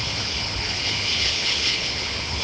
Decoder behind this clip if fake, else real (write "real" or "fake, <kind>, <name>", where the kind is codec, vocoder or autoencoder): fake, codec, HILCodec